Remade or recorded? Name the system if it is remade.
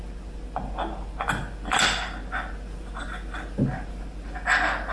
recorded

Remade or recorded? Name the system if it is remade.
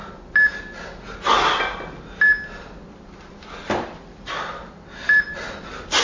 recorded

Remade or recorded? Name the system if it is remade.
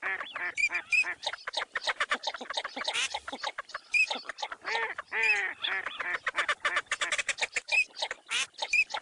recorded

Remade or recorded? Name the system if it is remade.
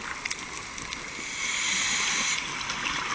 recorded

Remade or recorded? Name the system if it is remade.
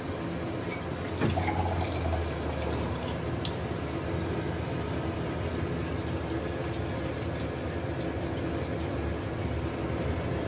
recorded